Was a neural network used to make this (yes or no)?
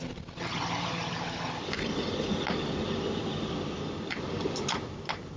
no